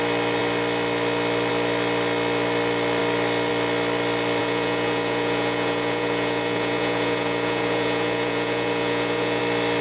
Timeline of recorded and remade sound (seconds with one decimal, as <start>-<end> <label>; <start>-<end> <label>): 0.0-4.4 recorded; 4.4-9.4 remade; 9.4-9.8 recorded